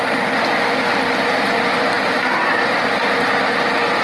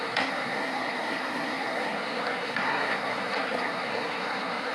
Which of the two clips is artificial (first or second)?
second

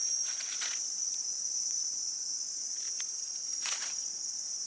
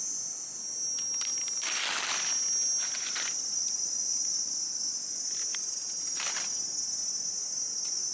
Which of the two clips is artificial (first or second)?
first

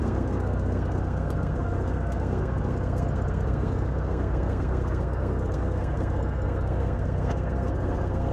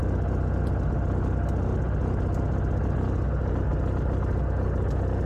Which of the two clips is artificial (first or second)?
first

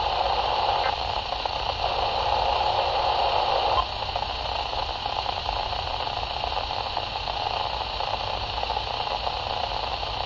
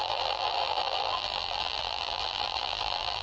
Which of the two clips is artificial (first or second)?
second